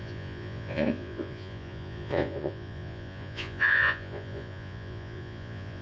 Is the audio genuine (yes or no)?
no